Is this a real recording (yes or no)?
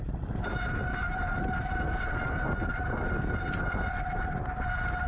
yes